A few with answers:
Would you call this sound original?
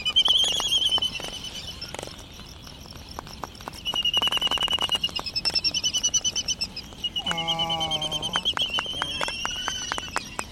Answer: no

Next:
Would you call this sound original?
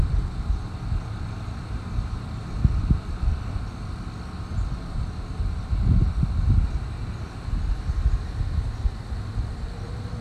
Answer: yes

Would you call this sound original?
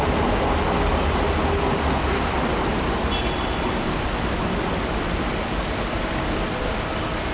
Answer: yes